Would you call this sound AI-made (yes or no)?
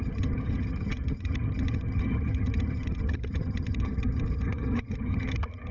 yes